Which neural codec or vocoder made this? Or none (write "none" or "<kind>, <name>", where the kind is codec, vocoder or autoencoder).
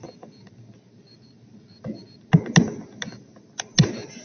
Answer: none